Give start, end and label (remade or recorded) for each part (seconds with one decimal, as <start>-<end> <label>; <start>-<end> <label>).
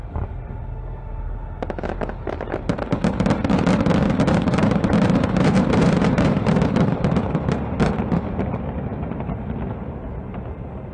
0.0-4.6 recorded; 4.6-7.8 remade; 7.8-8.9 recorded; 8.9-9.4 remade; 9.4-10.9 recorded